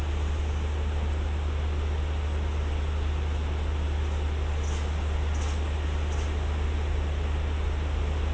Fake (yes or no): no